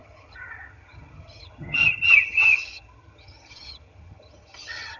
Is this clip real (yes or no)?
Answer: no